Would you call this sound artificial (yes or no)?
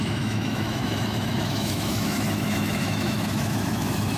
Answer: yes